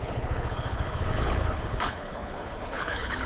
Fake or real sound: fake